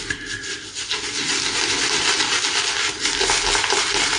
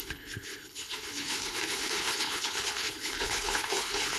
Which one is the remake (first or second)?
second